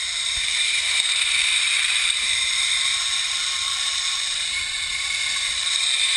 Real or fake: fake